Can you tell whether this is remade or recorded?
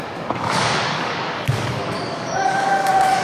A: remade